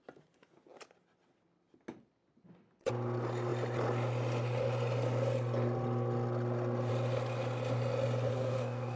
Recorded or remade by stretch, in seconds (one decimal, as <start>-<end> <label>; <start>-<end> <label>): 0.0-8.3 recorded; 8.3-9.0 remade